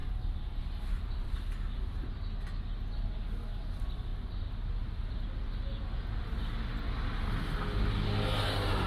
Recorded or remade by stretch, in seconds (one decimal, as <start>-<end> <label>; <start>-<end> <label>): 0.0-0.6 remade; 0.6-8.9 recorded